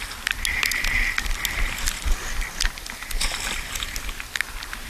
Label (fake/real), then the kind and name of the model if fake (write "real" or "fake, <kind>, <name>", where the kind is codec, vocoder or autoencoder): real